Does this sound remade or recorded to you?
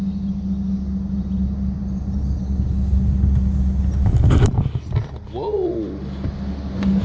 recorded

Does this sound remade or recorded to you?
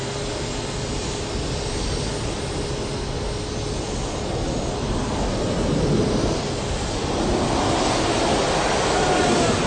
recorded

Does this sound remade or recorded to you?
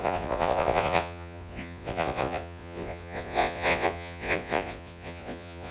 remade